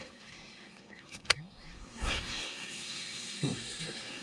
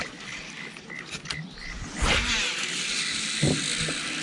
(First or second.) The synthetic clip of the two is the first